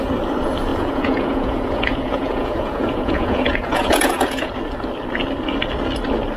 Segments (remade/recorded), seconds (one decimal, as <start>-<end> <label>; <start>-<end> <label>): 0.0-0.7 recorded; 0.7-4.5 remade; 4.5-6.4 recorded